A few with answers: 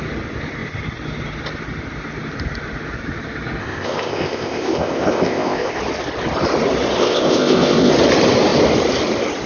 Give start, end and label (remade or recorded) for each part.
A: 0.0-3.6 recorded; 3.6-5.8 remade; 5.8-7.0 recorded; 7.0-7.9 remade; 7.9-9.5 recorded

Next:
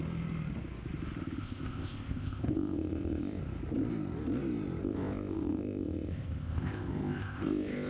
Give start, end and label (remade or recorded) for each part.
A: 0.0-1.4 recorded; 1.4-3.4 remade; 3.4-4.8 recorded; 4.8-7.9 remade

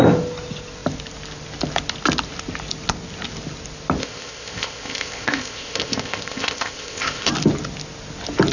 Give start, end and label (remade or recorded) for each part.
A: 0.0-4.0 recorded; 4.0-7.3 remade; 7.3-8.5 recorded